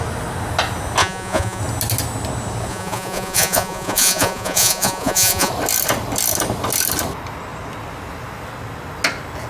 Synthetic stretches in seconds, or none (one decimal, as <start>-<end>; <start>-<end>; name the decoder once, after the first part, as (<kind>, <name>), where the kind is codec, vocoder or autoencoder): 1.0-1.6 (vocoder, Vocos); 2.7-5.5